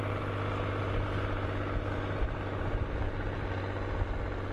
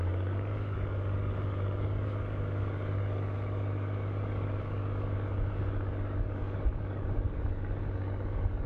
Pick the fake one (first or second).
second